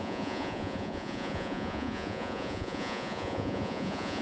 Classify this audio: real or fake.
fake